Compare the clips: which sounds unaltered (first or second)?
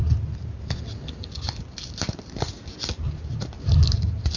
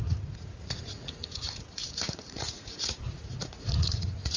first